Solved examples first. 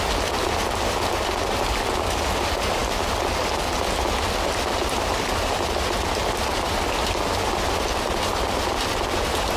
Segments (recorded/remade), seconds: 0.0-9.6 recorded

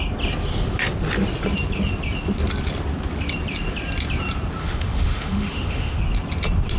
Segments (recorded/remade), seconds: 0.0-4.6 recorded; 4.6-6.0 remade; 6.0-6.8 recorded

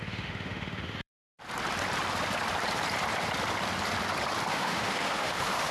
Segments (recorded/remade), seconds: 0.0-1.1 remade; 1.1-4.5 recorded; 4.5-5.7 remade

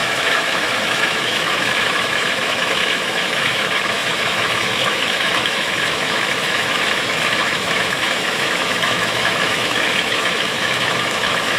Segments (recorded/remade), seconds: 0.0-11.6 remade

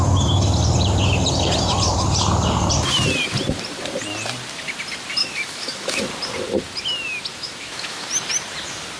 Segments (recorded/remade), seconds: 0.0-5.2 recorded; 5.2-6.0 remade; 6.0-7.3 recorded; 7.3-8.1 remade; 8.1-9.0 recorded

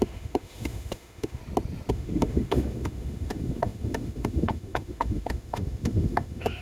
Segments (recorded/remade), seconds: 0.0-1.4 remade; 1.4-1.9 recorded; 1.9-6.6 remade

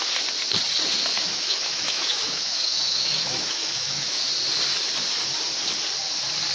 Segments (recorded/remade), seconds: 0.0-1.1 recorded; 1.1-4.3 remade; 4.3-6.5 recorded

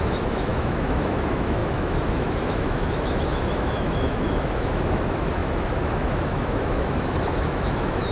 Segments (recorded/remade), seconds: 0.0-8.1 remade